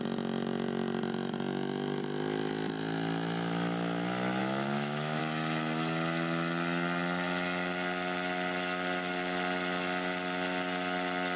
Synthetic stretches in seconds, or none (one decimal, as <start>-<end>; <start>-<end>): 4.4-5.2